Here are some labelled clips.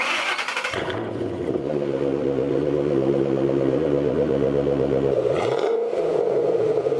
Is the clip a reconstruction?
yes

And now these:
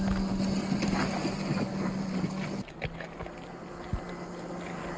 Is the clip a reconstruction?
no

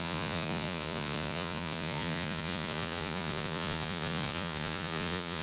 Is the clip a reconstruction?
yes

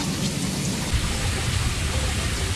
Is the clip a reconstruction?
no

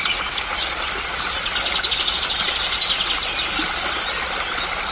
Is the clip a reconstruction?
no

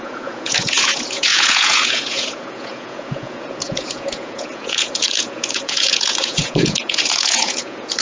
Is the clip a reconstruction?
yes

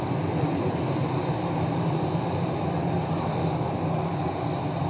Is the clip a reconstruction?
no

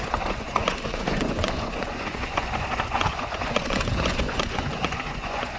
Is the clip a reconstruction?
yes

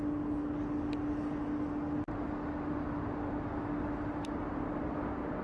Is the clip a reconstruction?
no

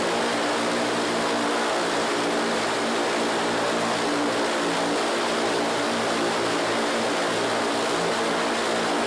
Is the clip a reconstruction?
no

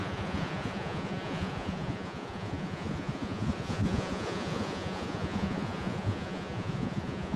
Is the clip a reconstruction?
yes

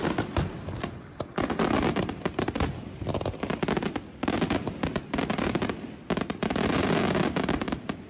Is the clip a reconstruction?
no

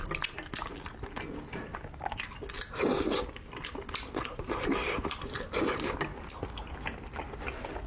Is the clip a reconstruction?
no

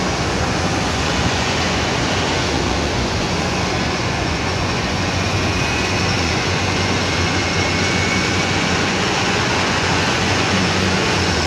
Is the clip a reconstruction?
yes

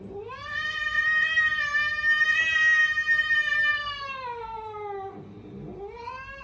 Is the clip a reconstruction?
no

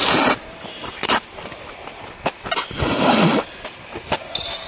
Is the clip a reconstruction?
no